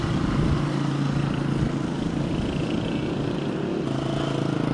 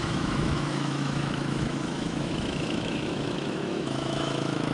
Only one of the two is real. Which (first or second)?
first